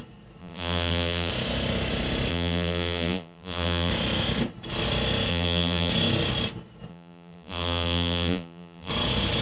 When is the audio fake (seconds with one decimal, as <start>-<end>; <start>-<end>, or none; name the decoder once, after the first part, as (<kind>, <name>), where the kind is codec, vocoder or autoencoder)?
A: 0.4-1.3 (vocoder, BigVGAN v2); 2.3-3.9; 5.3-5.9; 6.9-8.9